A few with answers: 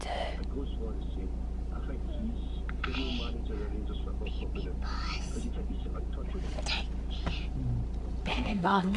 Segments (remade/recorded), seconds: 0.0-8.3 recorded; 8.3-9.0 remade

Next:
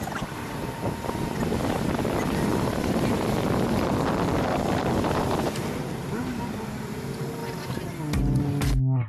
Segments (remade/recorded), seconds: 0.0-9.1 recorded

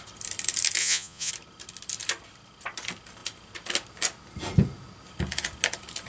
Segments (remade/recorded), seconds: 0.0-0.8 recorded; 0.8-1.3 remade; 1.3-6.1 recorded

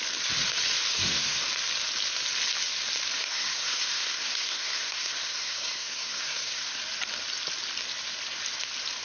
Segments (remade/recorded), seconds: 0.0-0.9 recorded; 0.9-1.4 remade; 1.4-3.2 recorded; 3.2-6.8 remade; 6.8-9.0 recorded

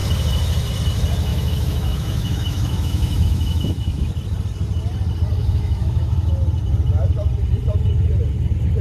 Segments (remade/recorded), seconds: 0.0-1.3 recorded; 1.3-4.1 remade; 4.1-5.4 recorded; 5.4-6.3 remade; 6.3-8.8 recorded